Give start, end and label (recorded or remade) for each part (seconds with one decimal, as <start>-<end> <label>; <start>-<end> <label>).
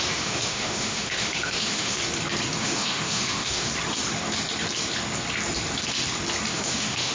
0.0-2.0 remade; 2.0-2.6 recorded; 2.6-3.7 remade; 3.7-6.5 recorded; 6.5-7.1 remade